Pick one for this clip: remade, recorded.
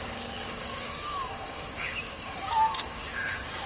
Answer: remade